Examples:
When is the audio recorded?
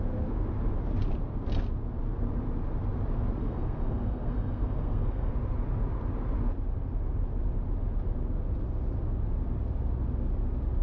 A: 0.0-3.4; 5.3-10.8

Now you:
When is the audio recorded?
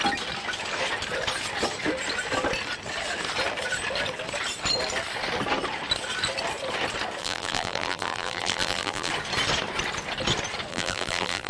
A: 0.0-7.2; 9.1-10.7